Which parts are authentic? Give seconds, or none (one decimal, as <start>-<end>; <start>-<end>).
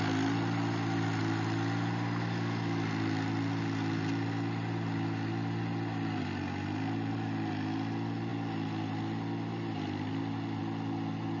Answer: 0.0-11.4